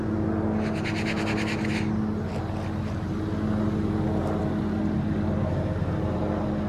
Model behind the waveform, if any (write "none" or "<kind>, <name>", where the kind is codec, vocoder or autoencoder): none